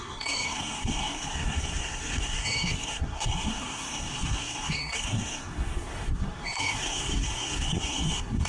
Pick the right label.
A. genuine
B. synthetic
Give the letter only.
B